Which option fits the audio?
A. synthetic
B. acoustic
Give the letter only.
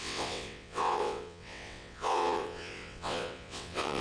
A